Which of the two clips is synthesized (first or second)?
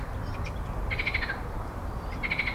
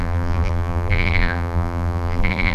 second